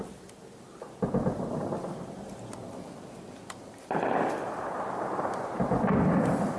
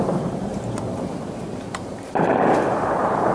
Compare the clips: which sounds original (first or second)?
first